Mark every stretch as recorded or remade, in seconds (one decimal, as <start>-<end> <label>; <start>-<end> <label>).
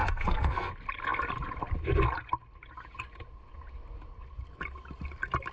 0.0-0.7 remade; 0.7-5.5 recorded